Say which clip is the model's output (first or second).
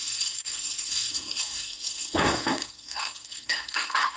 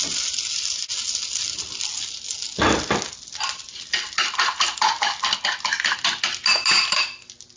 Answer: first